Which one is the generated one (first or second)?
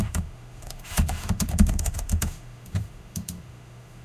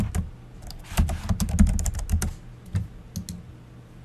first